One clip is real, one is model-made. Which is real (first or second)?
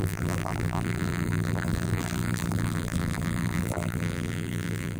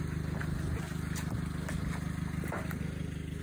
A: second